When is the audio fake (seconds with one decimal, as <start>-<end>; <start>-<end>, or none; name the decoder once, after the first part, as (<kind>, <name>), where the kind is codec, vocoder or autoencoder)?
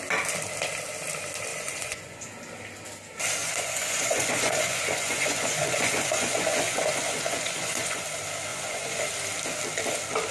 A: 1.5-2.2 (vocoder, Vocos); 3.4-8.0; 8.5-9.0